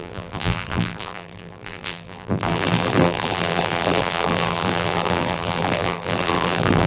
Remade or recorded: remade